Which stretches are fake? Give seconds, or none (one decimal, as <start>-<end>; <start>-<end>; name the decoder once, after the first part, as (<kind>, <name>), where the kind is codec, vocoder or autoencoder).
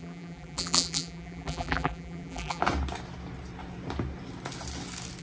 0.0-2.6 (vocoder, BigVGAN v2)